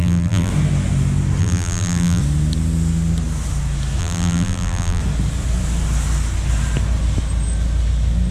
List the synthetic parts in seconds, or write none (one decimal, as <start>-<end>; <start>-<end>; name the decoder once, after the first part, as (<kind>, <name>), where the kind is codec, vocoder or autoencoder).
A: 0.0-0.5 (vocoder, BigVGAN v2); 1.4-2.2; 4.0-5.0